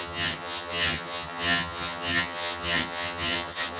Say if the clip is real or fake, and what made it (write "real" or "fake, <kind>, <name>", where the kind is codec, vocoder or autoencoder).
fake, vocoder, HiFi-GAN